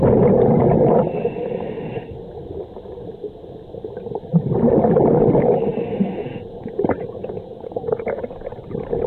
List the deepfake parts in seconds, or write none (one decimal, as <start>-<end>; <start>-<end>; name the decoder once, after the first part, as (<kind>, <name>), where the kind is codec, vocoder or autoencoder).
6.2-8.5 (vocoder, Vocos)